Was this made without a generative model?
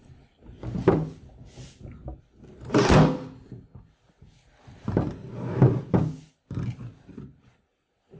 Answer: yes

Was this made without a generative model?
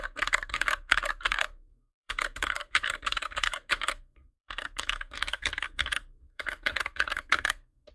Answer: no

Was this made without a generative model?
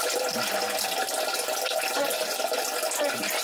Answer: yes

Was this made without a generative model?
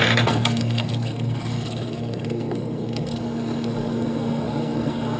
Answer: no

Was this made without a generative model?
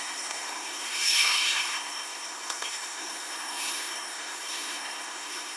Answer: no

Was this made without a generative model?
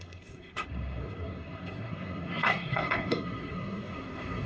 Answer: no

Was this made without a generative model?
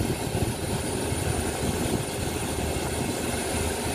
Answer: yes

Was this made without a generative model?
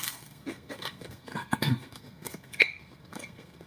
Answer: no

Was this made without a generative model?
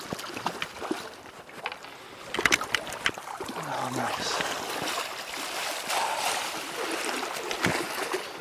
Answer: yes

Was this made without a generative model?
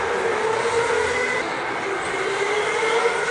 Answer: yes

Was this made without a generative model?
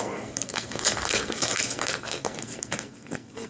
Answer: no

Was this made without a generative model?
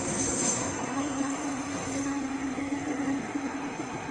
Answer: no